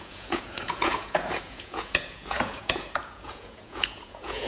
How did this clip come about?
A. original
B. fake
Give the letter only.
B